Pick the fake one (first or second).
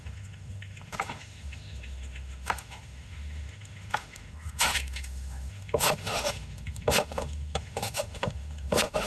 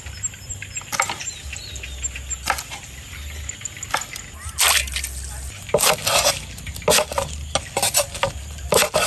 first